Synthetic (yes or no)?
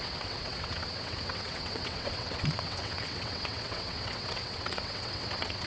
yes